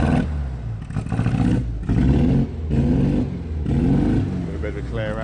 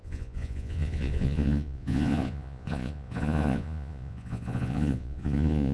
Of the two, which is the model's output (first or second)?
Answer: second